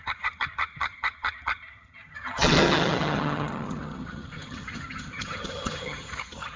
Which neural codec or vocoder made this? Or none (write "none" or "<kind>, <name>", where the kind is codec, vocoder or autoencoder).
vocoder, HiFi-GAN